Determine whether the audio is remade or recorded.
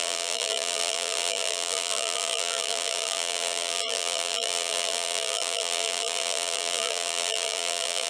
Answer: remade